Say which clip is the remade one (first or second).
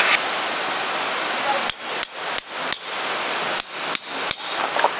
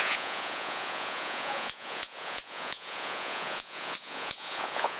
second